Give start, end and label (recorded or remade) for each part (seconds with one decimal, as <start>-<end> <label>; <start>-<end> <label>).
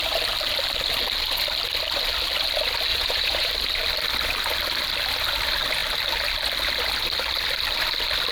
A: 0.0-2.9 recorded; 2.9-3.5 remade; 3.5-8.3 recorded